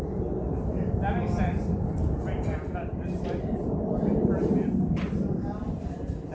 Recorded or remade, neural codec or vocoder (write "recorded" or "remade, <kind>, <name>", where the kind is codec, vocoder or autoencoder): recorded